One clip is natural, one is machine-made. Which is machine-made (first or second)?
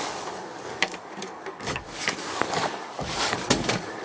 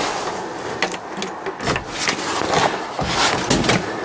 first